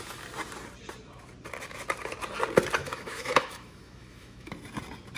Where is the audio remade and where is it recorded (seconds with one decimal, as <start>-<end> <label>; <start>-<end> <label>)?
0.0-2.8 recorded; 2.8-4.5 remade; 4.5-5.2 recorded